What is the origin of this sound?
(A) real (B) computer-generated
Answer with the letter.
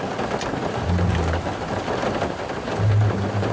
A